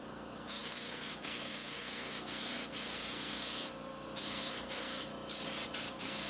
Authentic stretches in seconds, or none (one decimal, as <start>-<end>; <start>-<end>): 5.1-5.8